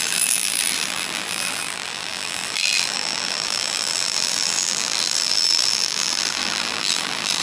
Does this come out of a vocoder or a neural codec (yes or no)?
yes